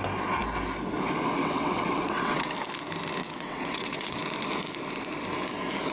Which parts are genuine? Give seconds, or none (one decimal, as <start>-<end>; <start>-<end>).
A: 0.0-1.4; 2.5-3.2; 4.2-5.9